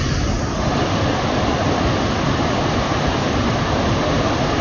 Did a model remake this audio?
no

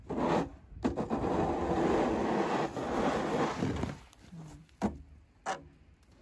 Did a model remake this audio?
no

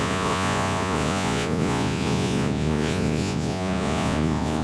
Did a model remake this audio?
yes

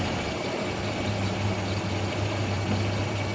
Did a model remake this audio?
no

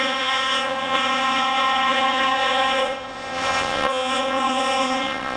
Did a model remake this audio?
yes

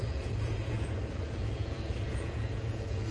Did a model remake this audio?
yes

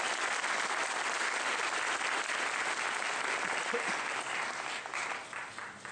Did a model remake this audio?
no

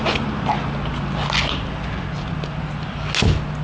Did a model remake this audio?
no